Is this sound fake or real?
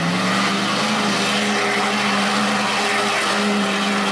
real